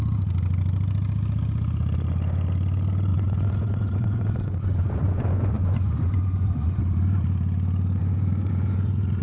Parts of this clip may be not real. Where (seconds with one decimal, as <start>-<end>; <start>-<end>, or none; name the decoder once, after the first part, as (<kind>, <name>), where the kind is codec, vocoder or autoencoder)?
3.1-6.8 (vocoder, Vocos); 8.0-9.2